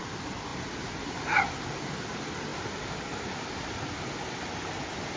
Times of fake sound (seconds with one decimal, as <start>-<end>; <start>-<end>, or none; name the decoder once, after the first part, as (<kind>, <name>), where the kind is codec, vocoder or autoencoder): none